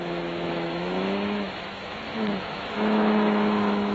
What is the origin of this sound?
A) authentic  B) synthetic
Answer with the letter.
B